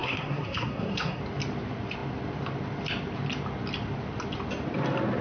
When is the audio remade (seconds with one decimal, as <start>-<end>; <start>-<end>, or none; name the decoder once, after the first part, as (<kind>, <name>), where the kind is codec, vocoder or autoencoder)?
0.0-1.2 (codec, SNAC)